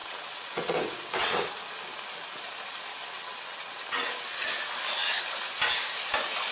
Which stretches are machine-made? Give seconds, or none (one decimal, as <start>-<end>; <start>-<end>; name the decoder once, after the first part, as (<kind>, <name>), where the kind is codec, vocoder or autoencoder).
0.0-1.5 (vocoder, WaveNeXt); 2.9-4.5